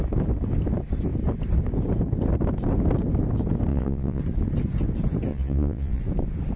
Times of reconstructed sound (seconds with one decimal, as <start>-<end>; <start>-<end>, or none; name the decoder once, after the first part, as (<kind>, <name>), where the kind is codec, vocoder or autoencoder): 3.7-4.2 (vocoder, Vocos); 5.3-6.0